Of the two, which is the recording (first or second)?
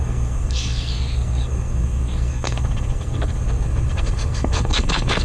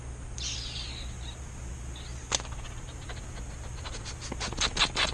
second